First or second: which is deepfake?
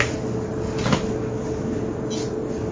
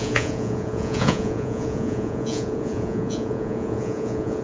second